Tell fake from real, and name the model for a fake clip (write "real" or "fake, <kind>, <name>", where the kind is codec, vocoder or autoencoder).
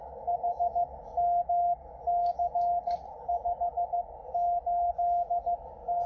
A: real